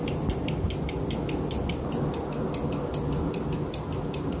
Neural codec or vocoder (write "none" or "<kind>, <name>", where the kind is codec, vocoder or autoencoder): none